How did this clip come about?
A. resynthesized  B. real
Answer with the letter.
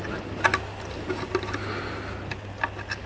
B